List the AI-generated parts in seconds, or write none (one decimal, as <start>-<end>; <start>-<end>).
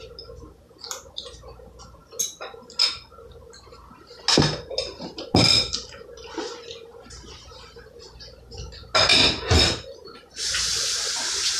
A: none